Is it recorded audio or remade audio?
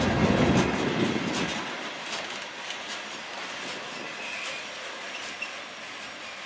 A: recorded